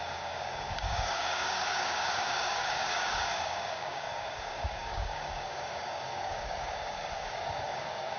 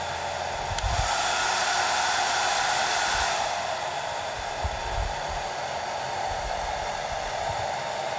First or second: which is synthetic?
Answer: first